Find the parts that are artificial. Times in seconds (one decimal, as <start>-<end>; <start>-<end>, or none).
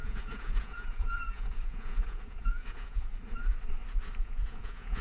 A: 0.0-3.1; 4.2-5.0